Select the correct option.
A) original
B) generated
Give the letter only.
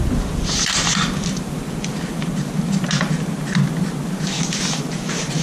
A